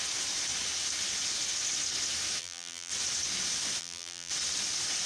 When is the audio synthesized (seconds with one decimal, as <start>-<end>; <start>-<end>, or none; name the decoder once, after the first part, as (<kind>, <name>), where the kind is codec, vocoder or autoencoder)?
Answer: 2.4-2.9 (vocoder, BigVGAN v2); 3.8-4.3